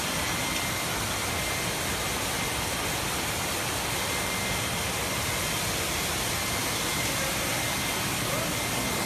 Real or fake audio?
real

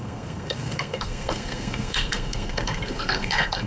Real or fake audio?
fake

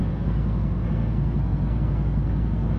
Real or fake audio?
fake